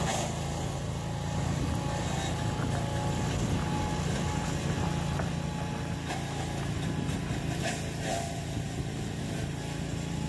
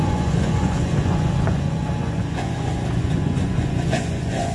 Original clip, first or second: first